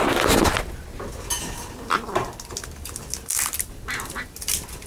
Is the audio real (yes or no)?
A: yes